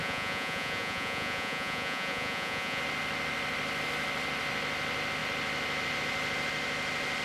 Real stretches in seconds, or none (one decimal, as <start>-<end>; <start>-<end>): 2.8-7.2

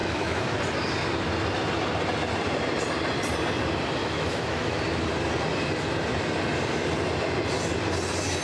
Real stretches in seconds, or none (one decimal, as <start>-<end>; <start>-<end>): 0.6-4.0; 4.8-8.4

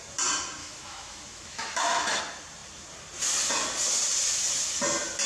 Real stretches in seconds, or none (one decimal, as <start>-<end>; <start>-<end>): 0.0-0.6; 2.2-5.3

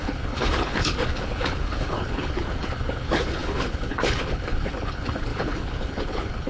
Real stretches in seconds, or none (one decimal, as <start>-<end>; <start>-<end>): none

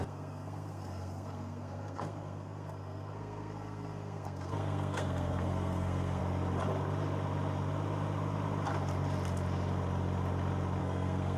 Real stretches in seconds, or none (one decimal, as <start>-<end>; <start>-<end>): 6.2-10.8